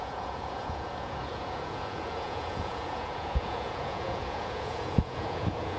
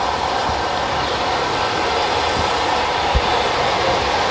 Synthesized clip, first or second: first